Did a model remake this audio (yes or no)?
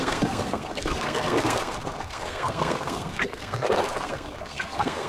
yes